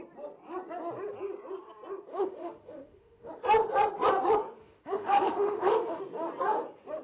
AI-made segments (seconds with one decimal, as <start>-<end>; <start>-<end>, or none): 2.1-3.3; 4.6-6.0

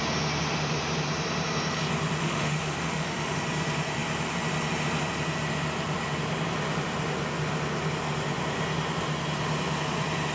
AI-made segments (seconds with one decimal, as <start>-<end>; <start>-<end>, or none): 2.2-3.4